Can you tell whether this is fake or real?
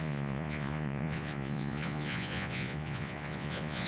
fake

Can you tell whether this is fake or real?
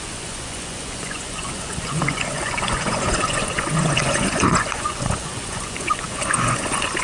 fake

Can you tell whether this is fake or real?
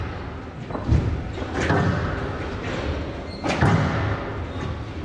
real